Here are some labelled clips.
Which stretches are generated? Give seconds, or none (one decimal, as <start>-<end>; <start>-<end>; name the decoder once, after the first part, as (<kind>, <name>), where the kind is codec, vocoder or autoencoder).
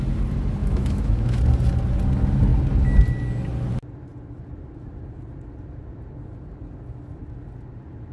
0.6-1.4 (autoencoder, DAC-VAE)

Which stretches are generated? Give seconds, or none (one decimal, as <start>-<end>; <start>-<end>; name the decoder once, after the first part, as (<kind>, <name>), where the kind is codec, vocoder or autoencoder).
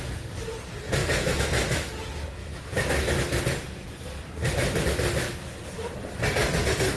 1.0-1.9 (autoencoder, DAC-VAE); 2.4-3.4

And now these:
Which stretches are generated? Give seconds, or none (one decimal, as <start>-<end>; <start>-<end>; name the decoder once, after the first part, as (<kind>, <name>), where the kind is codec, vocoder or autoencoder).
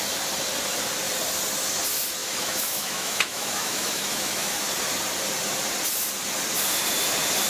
2.2-4.6 (autoencoder, DAC-VAE)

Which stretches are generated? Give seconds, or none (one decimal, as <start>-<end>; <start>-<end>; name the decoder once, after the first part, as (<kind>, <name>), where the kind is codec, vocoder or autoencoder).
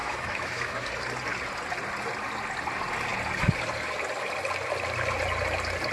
0.0-0.9 (autoencoder, DAC-VAE)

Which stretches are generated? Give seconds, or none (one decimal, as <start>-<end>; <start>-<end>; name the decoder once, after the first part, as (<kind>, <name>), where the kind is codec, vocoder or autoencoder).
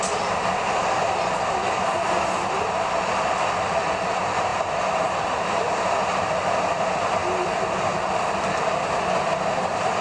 none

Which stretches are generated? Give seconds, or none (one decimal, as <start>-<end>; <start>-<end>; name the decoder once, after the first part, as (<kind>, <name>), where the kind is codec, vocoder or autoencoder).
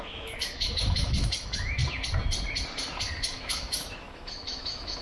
0.0-1.8 (autoencoder, DAC-VAE); 3.2-5.0